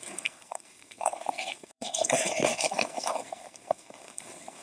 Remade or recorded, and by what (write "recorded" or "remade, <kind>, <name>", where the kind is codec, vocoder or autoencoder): remade, codec, SNAC